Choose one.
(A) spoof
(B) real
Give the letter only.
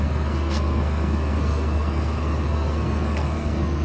A